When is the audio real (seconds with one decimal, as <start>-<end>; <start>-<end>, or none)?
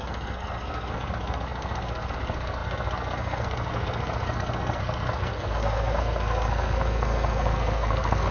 none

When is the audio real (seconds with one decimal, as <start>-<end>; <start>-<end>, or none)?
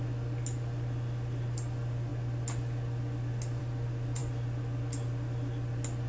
0.0-6.1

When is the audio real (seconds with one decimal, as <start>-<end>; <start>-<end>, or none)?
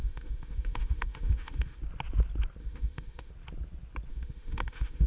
1.8-2.6; 3.3-4.1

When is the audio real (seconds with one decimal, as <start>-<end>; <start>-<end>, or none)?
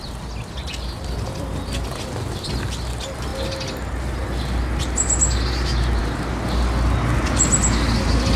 0.0-8.4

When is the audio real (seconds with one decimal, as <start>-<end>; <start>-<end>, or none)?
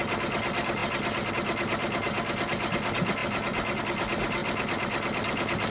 0.0-5.7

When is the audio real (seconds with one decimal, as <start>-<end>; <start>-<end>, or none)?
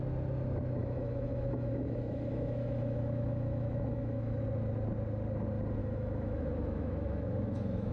0.0-0.8; 4.4-5.8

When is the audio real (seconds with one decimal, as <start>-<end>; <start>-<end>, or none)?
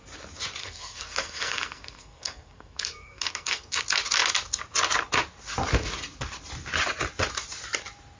0.0-0.6; 3.8-8.2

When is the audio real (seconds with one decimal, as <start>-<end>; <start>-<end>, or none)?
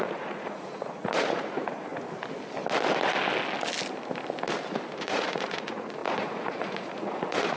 1.9-5.0